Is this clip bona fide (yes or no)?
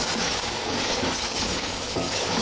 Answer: no